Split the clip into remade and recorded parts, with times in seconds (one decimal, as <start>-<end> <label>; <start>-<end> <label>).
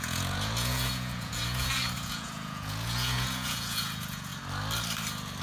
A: 0.0-4.3 remade; 4.3-5.4 recorded